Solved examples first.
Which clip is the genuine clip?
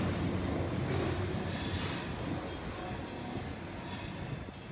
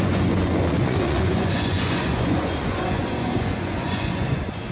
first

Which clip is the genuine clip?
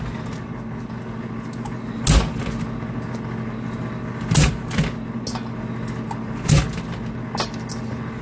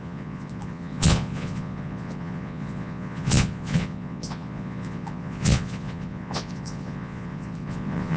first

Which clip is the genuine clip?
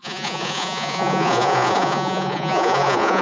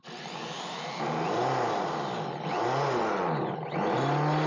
second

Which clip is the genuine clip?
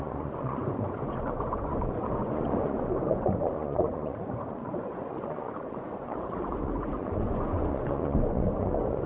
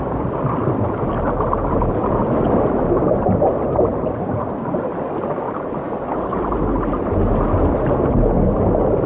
second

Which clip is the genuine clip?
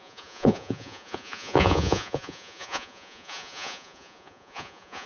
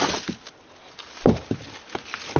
second